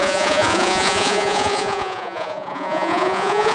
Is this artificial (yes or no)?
yes